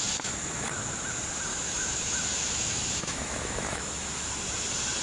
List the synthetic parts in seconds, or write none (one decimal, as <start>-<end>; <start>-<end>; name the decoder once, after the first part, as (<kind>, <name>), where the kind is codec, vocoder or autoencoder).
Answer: 1.5-4.3 (autoencoder, DAC-VAE)